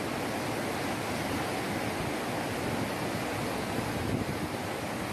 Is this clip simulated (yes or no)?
no